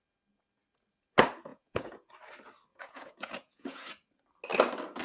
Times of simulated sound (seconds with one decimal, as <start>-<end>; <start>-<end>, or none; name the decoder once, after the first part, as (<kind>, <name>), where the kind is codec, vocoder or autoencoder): 1.5-2.1 (vocoder, Vocos); 2.7-3.8